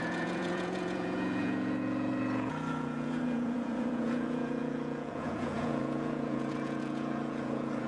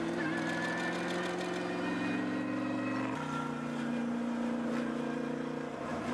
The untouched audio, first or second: second